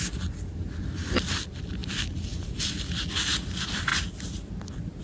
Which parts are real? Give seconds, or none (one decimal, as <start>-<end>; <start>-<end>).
0.0-5.0